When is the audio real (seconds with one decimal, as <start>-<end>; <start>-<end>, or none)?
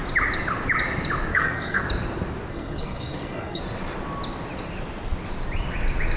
0.0-1.3; 1.8-2.5; 3.6-6.2